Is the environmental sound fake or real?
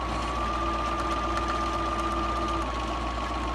real